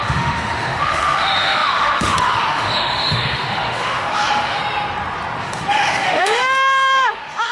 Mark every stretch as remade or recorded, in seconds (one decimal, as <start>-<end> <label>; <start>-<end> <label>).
0.0-4.6 remade; 4.6-5.4 recorded; 5.4-7.5 remade